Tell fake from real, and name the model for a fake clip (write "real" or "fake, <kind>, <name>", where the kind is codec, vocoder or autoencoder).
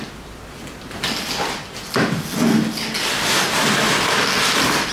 real